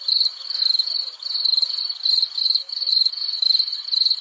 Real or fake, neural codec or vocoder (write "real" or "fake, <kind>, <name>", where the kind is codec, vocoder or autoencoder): real